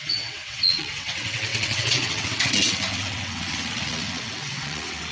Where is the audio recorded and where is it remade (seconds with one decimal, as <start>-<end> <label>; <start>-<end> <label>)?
0.0-5.1 remade